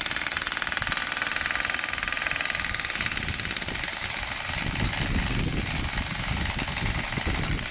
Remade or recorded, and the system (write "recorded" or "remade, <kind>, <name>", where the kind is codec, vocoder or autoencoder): recorded